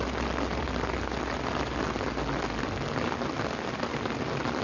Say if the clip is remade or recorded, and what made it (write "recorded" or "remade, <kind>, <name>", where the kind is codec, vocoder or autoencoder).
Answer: recorded